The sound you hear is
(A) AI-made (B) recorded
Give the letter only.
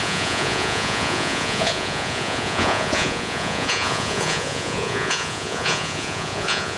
A